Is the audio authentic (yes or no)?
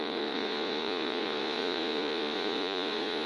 no